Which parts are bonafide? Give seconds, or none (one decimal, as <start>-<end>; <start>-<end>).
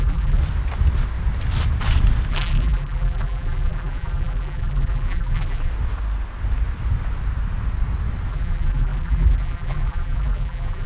0.4-2.3; 5.7-8.3